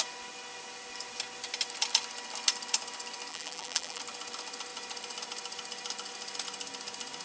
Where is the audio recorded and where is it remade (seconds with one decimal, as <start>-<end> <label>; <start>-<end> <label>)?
0.0-3.3 recorded; 3.3-4.0 remade; 4.0-7.2 recorded